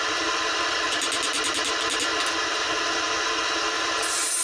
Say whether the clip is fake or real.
real